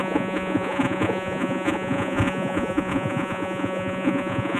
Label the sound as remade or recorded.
remade